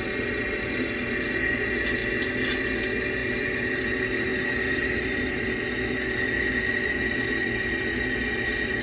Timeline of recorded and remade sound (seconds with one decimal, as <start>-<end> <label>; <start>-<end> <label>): 0.0-4.3 recorded; 4.3-5.4 remade; 5.4-8.8 recorded